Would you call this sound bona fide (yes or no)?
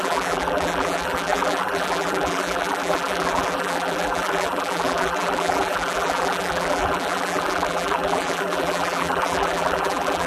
no